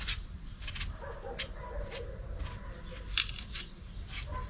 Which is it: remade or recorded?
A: recorded